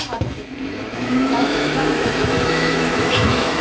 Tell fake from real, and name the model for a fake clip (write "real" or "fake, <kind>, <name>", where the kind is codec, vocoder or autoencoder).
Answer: fake, autoencoder, DAC-VAE